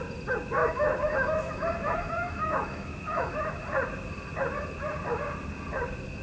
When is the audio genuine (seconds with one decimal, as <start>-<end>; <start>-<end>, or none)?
0.0-0.6; 3.6-6.2